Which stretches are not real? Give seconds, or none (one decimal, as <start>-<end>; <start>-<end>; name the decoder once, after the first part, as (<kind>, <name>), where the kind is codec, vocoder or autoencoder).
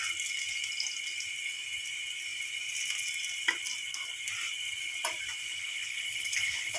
5.5-6.8 (codec, HILCodec)